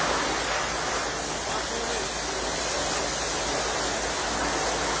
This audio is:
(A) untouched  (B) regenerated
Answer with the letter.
A